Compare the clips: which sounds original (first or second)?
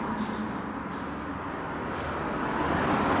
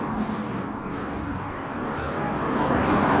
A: first